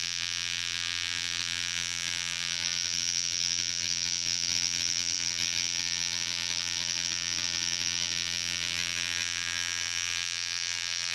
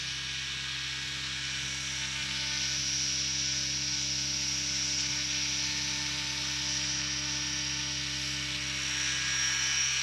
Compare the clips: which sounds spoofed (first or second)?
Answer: first